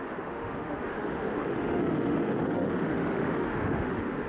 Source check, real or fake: fake